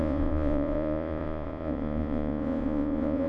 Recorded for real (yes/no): no